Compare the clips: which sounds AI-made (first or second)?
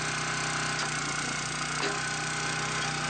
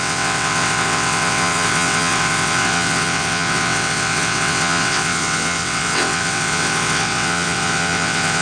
second